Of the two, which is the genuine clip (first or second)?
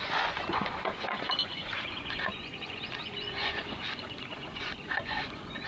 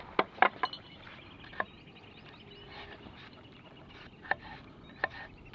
second